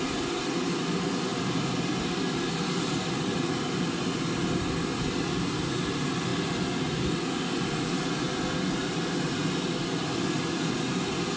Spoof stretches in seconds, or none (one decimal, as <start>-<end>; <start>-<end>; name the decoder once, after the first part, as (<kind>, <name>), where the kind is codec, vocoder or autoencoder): 1.3-2.2 (vocoder, BigVGAN v2); 4.9-5.4